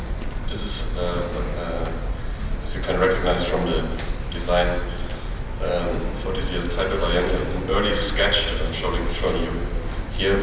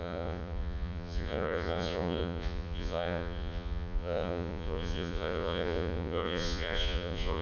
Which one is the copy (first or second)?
second